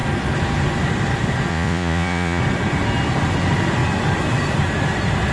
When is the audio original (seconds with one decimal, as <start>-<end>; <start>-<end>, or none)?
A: 0.0-1.5; 2.4-5.3